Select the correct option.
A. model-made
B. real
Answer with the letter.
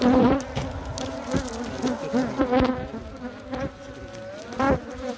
B